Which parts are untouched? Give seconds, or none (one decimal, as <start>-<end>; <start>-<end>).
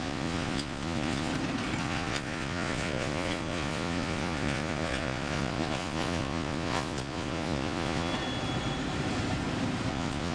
1.3-1.8; 8.1-9.9